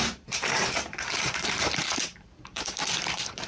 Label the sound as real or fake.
fake